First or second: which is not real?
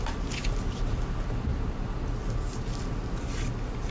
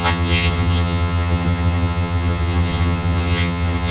second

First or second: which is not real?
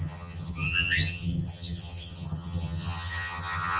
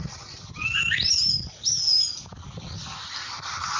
first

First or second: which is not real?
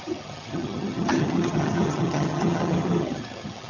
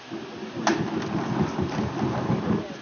first